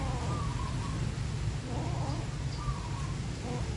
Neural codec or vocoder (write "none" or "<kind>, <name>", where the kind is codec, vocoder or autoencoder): none